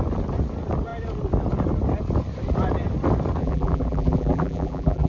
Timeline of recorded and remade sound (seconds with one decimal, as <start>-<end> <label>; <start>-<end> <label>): 0.0-3.4 recorded; 3.4-5.1 remade